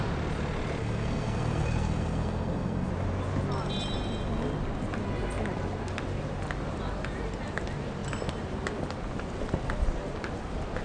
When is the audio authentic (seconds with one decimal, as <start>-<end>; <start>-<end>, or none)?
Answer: 0.0-0.8; 2.9-10.8